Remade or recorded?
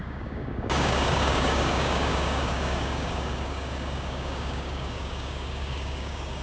remade